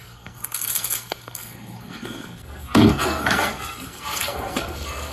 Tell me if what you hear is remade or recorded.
remade